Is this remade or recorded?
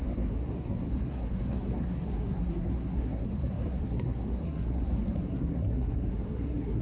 remade